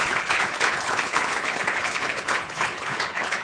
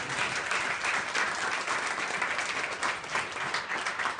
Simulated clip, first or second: first